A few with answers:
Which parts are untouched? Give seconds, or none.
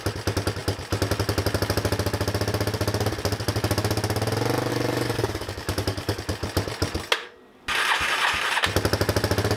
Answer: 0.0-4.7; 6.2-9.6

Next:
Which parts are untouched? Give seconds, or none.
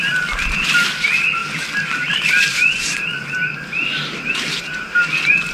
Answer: 0.0-5.5